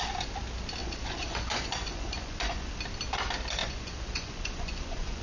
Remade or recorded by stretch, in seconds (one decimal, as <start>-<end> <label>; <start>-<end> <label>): 0.0-0.8 recorded; 0.8-2.7 remade; 2.7-3.6 recorded; 3.6-5.2 remade